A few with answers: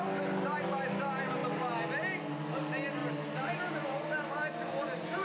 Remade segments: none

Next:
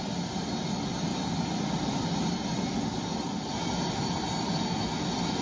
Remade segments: 1.1-4.3 (vocoder, BigVGAN v2)

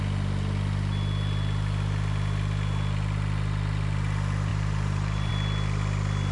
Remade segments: 4.5-5.3 (vocoder, BigVGAN v2)

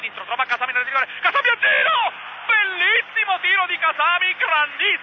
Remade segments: none

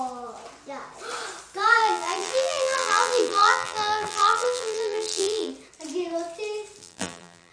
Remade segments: 1.8-5.5 (vocoder, BigVGAN v2); 6.8-7.5

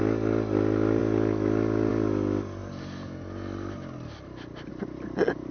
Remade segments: none

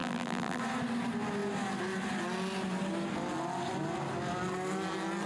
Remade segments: 0.0-0.6 (vocoder, BigVGAN v2)